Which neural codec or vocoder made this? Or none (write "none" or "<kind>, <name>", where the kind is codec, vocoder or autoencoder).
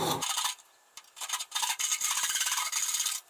vocoder, BigVGAN v2